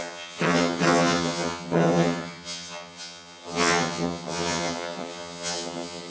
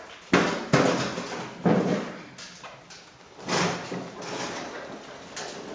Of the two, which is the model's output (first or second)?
first